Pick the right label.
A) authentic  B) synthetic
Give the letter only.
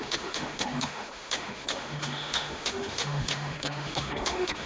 B